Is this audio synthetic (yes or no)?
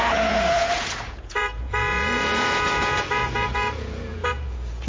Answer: yes